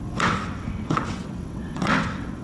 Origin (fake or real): fake